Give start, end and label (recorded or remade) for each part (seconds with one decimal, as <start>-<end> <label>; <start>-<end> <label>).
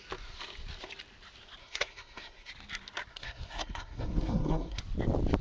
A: 0.0-1.6 recorded; 1.6-2.5 remade; 2.5-3.1 recorded; 3.1-4.8 remade; 4.8-5.4 recorded